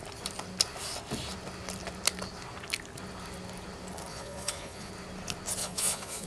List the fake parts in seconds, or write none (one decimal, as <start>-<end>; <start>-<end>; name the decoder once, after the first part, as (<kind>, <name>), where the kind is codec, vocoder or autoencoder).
4.1-4.9 (vocoder, Vocos); 5.6-6.3